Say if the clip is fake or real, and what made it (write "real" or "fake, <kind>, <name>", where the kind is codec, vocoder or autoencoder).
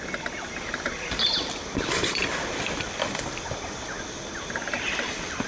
fake, vocoder, BigVGAN v2